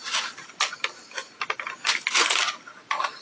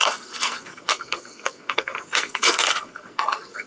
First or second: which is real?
first